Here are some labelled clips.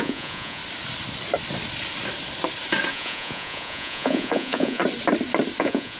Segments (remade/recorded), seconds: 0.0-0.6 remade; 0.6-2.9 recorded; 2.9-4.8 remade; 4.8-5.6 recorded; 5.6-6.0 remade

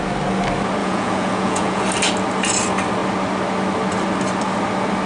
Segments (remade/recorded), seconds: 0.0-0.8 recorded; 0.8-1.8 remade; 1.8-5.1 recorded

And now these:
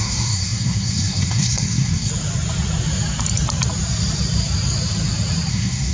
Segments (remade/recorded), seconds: 0.0-2.1 remade; 2.1-5.5 recorded; 5.5-5.9 remade

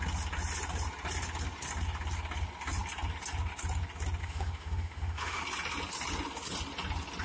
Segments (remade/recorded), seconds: 0.0-4.2 recorded; 4.2-5.4 remade; 5.4-7.2 recorded